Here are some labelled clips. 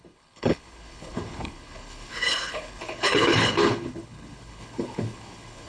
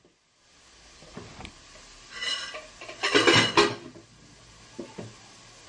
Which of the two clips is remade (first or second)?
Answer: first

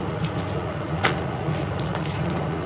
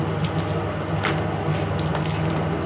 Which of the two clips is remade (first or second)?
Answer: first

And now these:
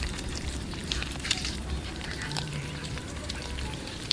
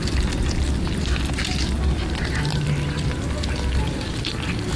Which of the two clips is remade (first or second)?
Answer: first